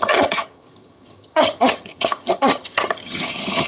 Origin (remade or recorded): remade